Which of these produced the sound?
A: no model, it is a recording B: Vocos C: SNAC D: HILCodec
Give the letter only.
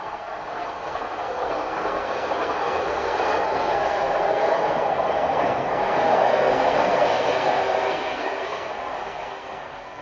C